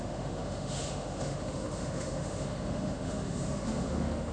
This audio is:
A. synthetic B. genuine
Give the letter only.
A